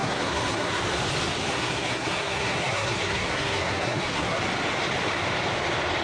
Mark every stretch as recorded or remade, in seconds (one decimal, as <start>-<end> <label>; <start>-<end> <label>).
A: 0.0-0.8 remade; 0.8-1.5 recorded; 1.5-4.4 remade; 4.4-6.0 recorded

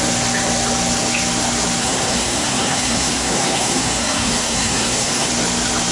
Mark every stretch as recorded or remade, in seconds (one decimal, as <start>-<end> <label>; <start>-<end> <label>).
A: 0.0-1.8 recorded; 1.8-5.3 remade; 5.3-5.9 recorded

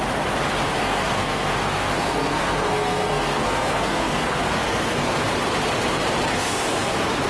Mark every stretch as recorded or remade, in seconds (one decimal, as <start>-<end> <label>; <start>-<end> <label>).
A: 0.0-0.8 recorded; 0.8-5.2 remade; 5.2-6.3 recorded; 6.3-7.3 remade

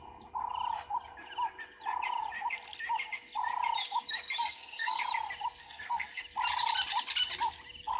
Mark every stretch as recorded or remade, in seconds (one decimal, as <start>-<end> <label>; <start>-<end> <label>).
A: 0.0-4.4 recorded; 4.4-5.0 remade; 5.0-5.6 recorded; 5.6-6.2 remade; 6.2-8.0 recorded

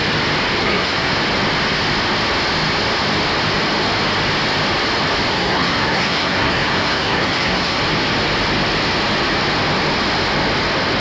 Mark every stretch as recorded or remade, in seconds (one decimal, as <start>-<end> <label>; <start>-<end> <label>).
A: 0.0-0.6 recorded; 0.6-1.2 remade; 1.2-5.3 recorded; 5.3-7.8 remade; 7.8-11.0 recorded

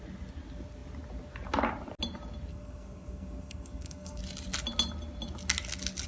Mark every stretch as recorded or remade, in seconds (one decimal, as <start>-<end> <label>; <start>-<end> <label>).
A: 0.0-2.5 recorded; 2.5-4.2 remade; 4.2-6.1 recorded